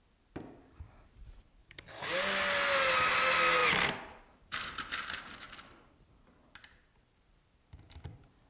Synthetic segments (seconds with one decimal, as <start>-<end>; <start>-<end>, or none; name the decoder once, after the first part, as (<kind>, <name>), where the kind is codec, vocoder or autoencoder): 1.6-2.2 (codec, DAC)